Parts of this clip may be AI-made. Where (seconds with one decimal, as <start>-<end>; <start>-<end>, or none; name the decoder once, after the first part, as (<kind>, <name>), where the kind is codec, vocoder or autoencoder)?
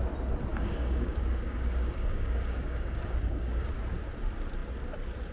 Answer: 0.5-3.7 (codec, DAC)